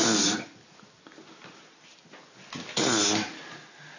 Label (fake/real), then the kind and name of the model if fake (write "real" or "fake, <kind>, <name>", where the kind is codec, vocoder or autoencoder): real